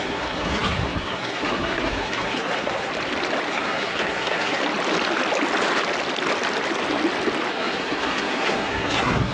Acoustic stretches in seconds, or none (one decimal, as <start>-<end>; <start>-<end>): 2.9-3.5; 4.6-7.5